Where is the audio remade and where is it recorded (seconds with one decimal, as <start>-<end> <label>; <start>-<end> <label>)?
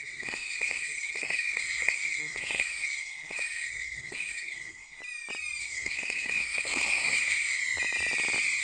0.0-5.0 remade; 5.0-5.6 recorded; 5.6-7.6 remade; 7.6-8.6 recorded